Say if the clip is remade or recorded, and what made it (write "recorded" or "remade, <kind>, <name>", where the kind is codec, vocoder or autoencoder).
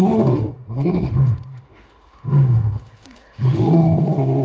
remade, autoencoder, DAC-VAE